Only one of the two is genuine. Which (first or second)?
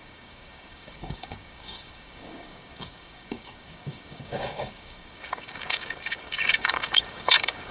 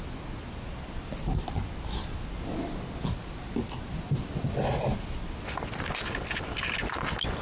second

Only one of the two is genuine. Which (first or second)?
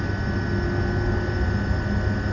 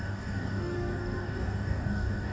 first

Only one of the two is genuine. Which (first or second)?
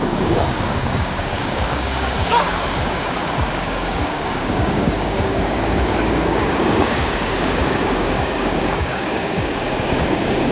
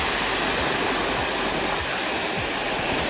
second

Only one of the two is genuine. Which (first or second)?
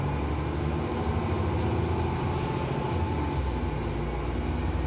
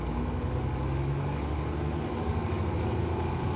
first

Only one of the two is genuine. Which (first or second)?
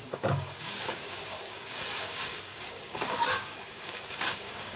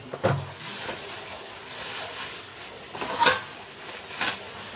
second